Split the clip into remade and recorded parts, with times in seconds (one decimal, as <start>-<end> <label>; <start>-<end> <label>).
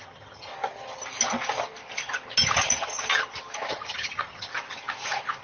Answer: 0.0-0.5 remade; 0.5-3.7 recorded; 3.7-4.5 remade; 4.5-5.4 recorded